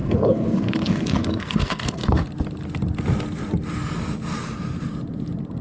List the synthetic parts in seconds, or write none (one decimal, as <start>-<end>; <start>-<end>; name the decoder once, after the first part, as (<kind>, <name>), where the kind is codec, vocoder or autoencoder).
0.0-2.2 (codec, SNAC)